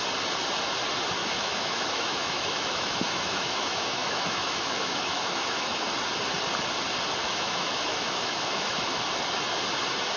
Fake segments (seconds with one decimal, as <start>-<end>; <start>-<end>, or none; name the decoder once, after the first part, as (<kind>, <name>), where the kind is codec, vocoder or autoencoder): 1.2-5.8 (autoencoder, DAC-VAE); 7.2-9.0